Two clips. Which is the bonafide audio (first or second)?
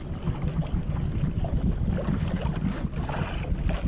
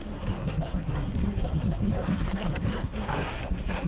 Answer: first